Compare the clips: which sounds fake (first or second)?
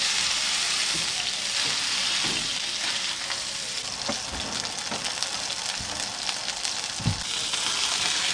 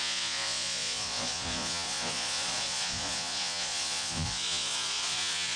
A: second